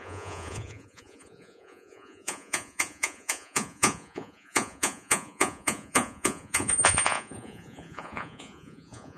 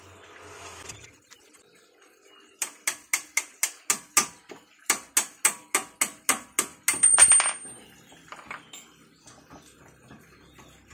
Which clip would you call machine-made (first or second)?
first